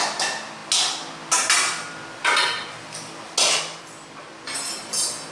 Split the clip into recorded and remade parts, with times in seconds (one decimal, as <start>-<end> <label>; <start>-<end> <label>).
0.0-5.3 recorded